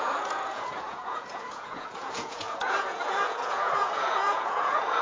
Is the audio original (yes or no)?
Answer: no